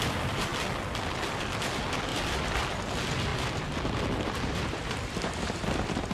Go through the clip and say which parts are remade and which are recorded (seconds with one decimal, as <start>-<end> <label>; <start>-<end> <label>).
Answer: 0.0-0.5 remade; 0.5-1.3 recorded; 1.3-3.3 remade; 3.3-4.5 recorded; 4.5-6.1 remade